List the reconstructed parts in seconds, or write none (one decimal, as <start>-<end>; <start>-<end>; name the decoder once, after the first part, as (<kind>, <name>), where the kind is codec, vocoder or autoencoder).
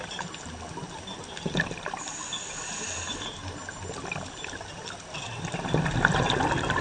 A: none